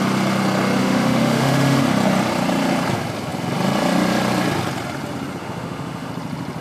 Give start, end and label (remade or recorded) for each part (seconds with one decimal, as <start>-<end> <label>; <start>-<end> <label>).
0.0-0.8 recorded; 0.8-1.8 remade; 1.8-5.4 recorded; 5.4-6.1 remade; 6.1-6.6 recorded